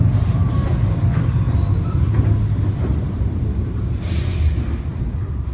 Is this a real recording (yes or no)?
yes